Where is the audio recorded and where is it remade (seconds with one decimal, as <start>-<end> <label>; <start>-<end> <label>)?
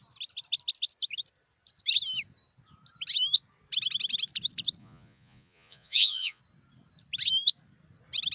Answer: 0.0-4.8 recorded; 4.8-6.4 remade; 6.4-8.3 recorded